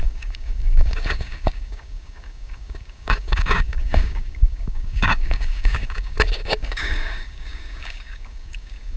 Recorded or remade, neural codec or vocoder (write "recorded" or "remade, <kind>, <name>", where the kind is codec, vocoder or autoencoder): remade, codec, DAC